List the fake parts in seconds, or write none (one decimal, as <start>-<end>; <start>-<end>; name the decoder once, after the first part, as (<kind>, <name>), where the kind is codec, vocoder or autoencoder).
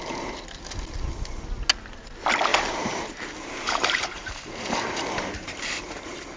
2.5-6.4 (vocoder, BigVGAN v2)